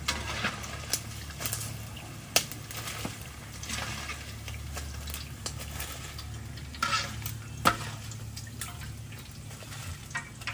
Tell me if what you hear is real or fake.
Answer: real